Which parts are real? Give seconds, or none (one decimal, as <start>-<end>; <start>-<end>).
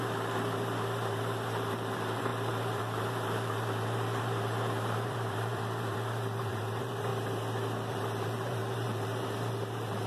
7.1-7.9